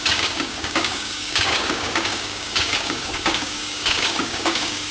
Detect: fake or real fake